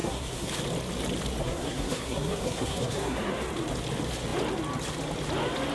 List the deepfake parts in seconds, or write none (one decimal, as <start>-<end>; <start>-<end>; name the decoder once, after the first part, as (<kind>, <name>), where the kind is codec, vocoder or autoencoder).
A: 0.0-0.5 (codec, SNAC); 1.4-3.3